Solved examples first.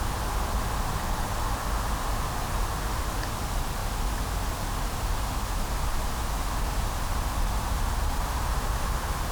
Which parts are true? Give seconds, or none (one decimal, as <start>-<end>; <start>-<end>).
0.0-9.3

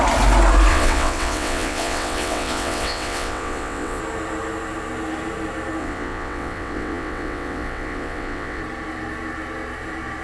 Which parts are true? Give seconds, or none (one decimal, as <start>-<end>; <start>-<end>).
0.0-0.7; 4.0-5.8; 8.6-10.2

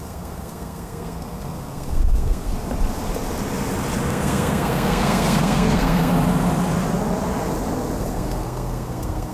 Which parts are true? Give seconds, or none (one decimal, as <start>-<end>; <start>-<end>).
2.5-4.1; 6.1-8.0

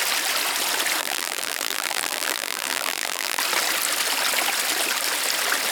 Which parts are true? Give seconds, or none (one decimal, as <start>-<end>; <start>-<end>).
0.0-1.0; 3.4-5.7

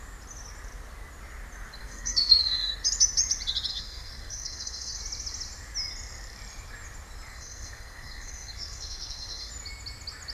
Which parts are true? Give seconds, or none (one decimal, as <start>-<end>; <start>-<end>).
0.0-1.8; 2.7-3.7; 5.0-7.3; 9.5-10.3

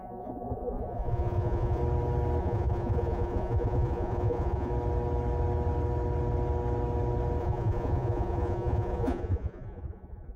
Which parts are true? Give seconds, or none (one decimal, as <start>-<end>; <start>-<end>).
1.8-2.4; 4.7-7.4

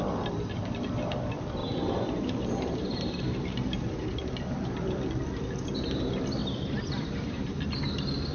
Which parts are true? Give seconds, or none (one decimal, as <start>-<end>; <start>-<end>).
0.0-1.6; 5.0-6.4; 7.4-8.3